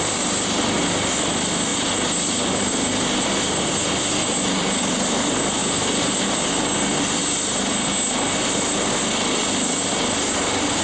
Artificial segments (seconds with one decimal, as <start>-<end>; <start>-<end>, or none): 0.0-1.7; 2.5-5.6; 6.5-7.2; 9.9-10.8